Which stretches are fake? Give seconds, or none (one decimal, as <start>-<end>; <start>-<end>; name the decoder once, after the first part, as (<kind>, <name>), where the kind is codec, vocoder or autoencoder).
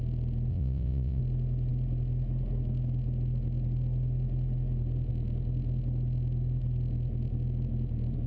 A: 0.5-1.2 (vocoder, Vocos)